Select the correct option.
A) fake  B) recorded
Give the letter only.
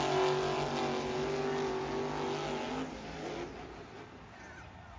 B